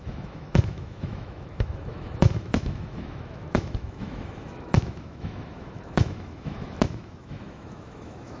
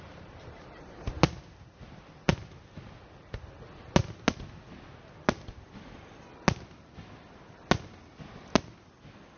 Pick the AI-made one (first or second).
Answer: first